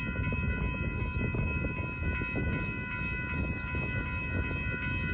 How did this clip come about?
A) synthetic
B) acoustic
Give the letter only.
B